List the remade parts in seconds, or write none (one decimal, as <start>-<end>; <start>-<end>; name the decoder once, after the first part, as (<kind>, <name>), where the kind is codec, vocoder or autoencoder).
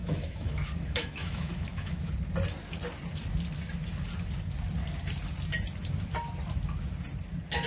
0.0-2.1 (autoencoder, DAC-VAE)